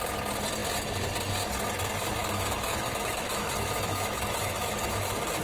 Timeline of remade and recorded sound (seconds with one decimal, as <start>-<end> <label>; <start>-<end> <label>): 0.0-2.2 recorded; 2.2-5.4 remade